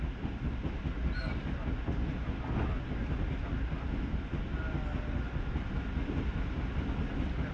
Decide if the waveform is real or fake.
real